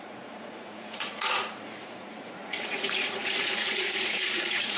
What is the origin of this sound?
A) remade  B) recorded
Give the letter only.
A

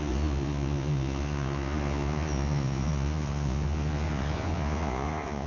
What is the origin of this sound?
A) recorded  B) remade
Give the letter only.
B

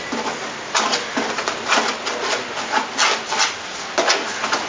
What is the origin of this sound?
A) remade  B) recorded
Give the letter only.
B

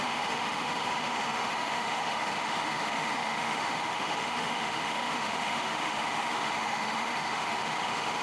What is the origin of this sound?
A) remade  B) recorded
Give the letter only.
A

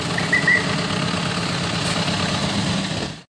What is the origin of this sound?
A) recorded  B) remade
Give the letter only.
A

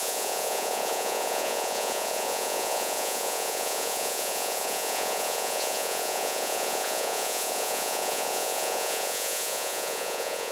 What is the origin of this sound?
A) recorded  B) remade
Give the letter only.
B